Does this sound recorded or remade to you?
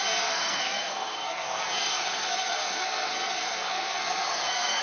remade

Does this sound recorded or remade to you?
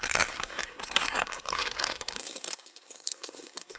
remade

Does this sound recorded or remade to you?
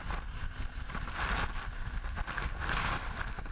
recorded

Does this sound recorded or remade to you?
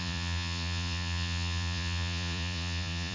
remade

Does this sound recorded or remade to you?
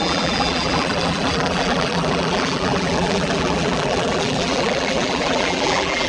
remade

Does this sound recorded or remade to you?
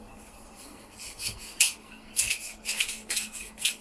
remade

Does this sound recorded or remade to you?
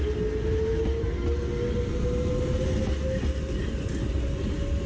recorded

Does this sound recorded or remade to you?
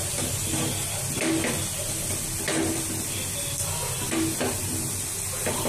recorded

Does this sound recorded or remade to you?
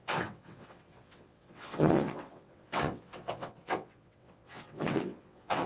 remade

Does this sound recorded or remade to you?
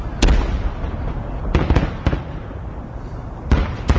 recorded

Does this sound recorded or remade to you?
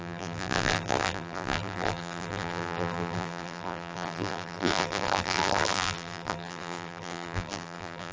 remade